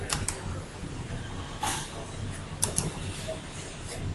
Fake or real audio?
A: fake